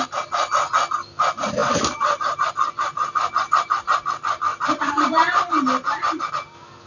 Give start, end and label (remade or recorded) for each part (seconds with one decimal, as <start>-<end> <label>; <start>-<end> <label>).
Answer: 0.0-1.6 recorded; 1.6-2.5 remade; 2.5-4.5 recorded; 4.5-6.3 remade; 6.3-6.9 recorded